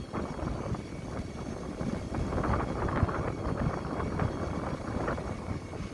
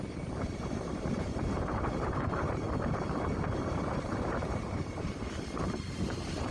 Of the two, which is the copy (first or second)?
second